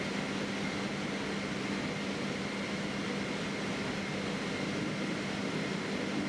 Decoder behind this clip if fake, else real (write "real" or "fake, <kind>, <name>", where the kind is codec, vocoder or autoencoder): real